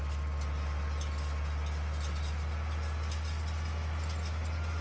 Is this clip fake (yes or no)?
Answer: no